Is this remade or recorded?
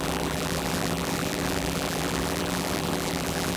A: remade